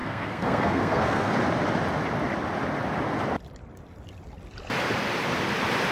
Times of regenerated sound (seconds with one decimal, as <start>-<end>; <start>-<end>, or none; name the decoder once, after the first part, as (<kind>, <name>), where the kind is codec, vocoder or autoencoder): 0.0-1.3 (codec, SNAC)